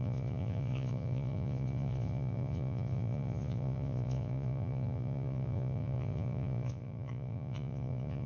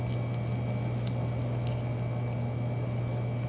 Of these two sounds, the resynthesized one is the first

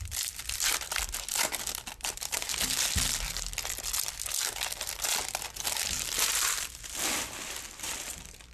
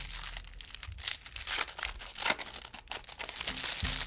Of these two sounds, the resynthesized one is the first